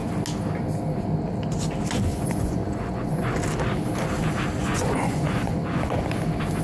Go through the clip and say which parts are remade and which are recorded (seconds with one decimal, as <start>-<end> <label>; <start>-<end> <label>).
0.0-2.1 recorded; 2.1-3.3 remade; 3.3-4.6 recorded; 4.6-6.0 remade; 6.0-6.6 recorded